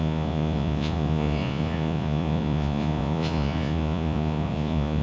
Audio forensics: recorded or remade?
remade